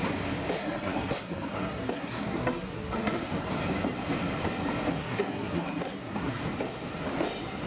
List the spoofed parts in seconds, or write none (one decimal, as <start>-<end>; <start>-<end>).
0.6-3.3; 5.0-6.4